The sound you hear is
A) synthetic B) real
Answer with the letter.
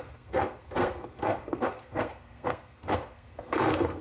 A